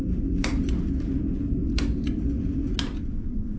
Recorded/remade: recorded